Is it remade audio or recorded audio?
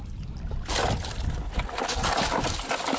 recorded